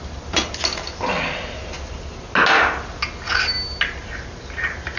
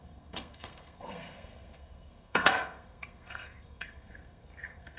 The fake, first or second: second